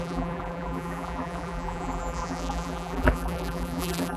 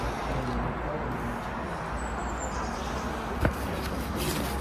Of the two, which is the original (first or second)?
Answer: second